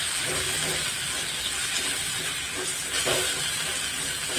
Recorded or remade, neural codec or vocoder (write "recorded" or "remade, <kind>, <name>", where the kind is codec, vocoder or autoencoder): recorded